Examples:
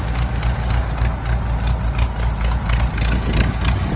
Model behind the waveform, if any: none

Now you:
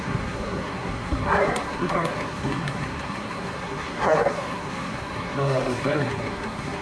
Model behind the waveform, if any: codec, SNAC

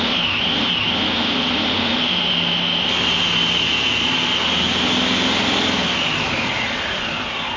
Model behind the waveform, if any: none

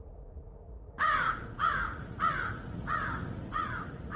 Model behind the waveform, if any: vocoder, Vocos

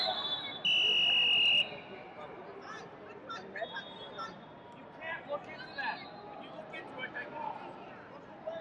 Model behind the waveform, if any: none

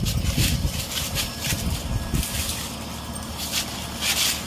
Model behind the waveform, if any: none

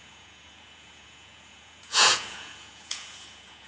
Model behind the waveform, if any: vocoder, Vocos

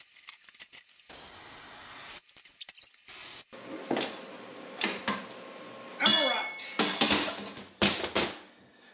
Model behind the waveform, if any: none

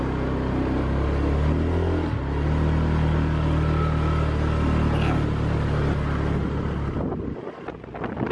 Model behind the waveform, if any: none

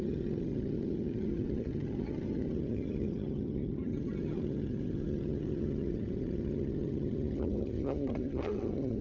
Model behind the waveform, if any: vocoder, HiFi-GAN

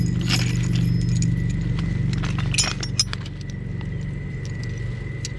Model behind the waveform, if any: none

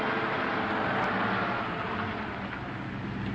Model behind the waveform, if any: none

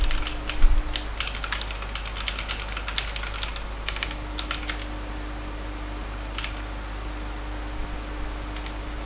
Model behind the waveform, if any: none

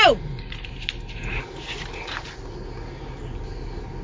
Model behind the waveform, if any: none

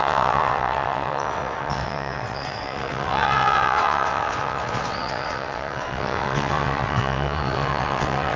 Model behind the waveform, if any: vocoder, WaveNeXt